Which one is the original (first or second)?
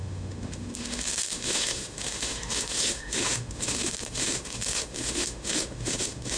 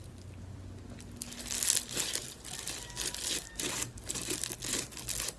second